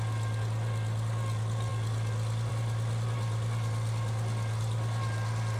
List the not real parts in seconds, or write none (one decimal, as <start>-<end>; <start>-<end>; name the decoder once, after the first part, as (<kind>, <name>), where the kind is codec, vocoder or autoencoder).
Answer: none